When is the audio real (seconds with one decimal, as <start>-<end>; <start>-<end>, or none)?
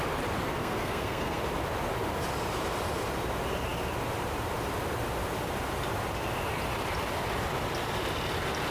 0.0-0.6; 1.4-8.7